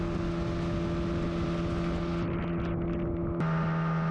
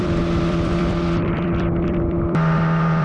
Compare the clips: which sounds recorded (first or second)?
first